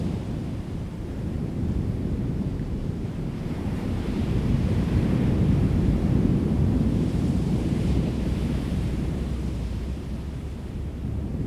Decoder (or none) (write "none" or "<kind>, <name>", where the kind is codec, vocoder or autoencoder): vocoder, BigVGAN v2